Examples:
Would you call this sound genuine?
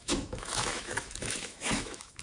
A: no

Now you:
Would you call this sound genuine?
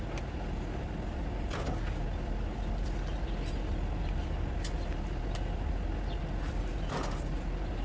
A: yes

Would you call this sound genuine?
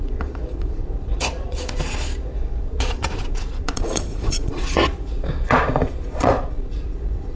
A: no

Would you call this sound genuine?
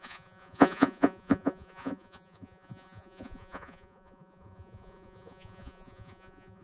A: no